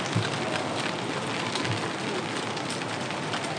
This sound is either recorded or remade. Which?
recorded